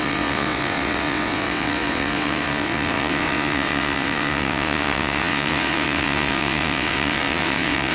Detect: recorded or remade remade